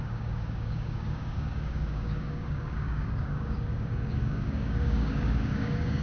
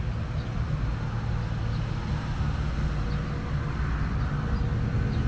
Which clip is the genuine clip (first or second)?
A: second